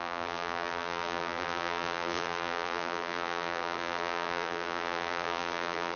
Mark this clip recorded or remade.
remade